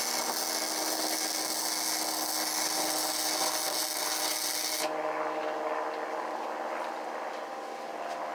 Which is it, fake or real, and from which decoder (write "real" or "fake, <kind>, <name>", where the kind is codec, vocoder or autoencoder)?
real